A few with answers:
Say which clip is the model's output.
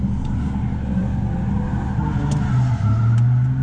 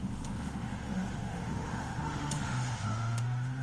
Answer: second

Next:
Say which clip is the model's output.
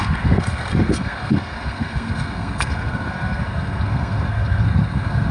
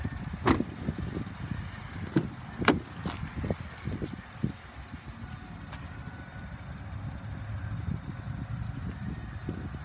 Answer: first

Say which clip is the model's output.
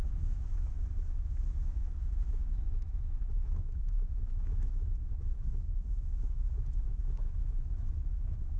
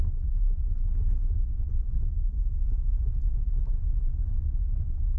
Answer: first